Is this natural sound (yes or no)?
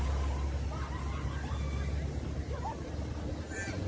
yes